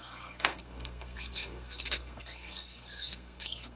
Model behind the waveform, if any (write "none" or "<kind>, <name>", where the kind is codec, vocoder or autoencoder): codec, SNAC